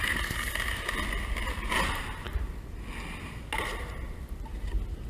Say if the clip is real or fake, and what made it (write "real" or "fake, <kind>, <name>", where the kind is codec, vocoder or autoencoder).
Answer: real